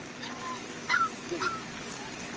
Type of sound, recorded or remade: remade